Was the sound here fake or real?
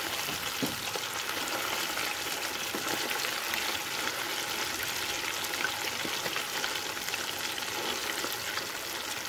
real